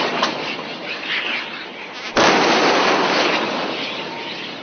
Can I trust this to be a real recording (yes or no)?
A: yes